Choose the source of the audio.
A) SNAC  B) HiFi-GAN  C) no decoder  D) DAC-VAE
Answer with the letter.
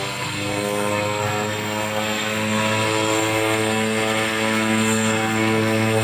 A